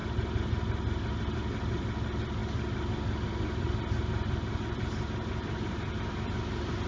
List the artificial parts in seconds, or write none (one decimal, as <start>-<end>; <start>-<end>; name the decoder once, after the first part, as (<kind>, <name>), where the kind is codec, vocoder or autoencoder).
1.1-6.9 (vocoder, BigVGAN v2)